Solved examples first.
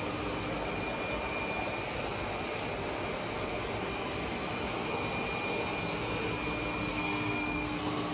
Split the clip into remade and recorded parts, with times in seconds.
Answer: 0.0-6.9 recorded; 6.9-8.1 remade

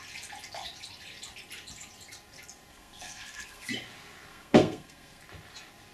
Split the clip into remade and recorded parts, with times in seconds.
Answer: 0.0-2.7 recorded; 2.7-3.7 remade; 3.7-4.3 recorded; 4.3-5.2 remade; 5.2-5.9 recorded

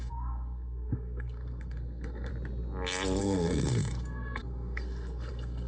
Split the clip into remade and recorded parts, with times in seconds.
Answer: 0.0-2.3 remade; 2.3-3.2 recorded; 3.2-5.7 remade

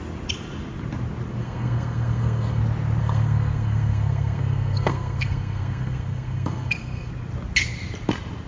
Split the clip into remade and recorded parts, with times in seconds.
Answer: 0.0-1.4 recorded; 1.4-2.6 remade; 2.6-3.0 recorded; 3.0-7.1 remade; 7.1-8.5 recorded

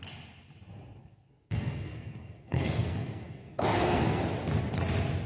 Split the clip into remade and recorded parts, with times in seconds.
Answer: 0.0-1.0 recorded; 1.0-4.2 remade; 4.2-5.3 recorded

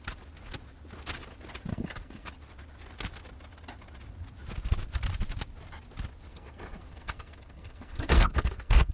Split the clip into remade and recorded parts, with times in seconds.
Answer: 0.0-1.7 recorded; 1.7-2.3 remade; 2.3-6.3 recorded; 6.3-8.9 remade